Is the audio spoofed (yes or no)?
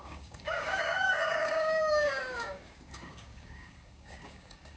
yes